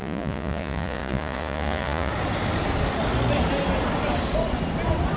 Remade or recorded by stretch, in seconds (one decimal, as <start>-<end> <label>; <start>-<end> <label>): 0.0-2.1 remade; 2.1-5.2 recorded